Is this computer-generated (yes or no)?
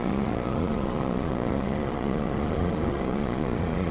yes